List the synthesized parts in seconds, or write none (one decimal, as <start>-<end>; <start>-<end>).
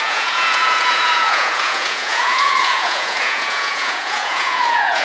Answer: 0.0-5.0